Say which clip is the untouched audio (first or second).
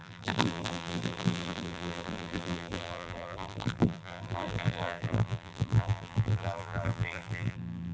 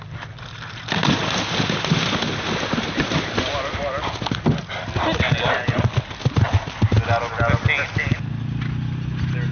second